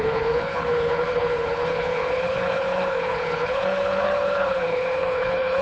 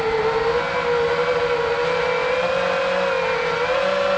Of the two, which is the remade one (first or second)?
first